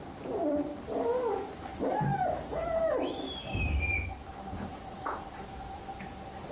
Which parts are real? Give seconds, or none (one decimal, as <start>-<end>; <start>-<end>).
0.0-1.7; 3.0-4.7; 5.2-6.5